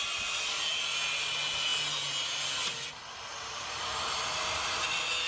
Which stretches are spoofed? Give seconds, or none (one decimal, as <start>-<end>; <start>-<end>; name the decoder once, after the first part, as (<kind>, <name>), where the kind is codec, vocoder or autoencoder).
3.3-3.9 (vocoder, BigVGAN v2)